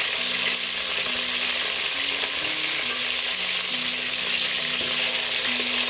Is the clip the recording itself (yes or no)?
yes